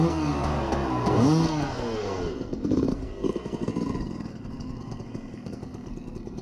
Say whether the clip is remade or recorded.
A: remade